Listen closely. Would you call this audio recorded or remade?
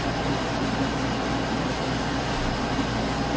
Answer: recorded